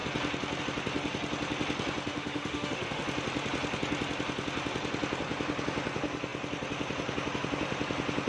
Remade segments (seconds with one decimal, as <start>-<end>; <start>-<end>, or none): 2.1-3.0